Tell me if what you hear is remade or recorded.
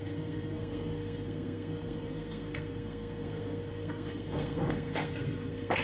remade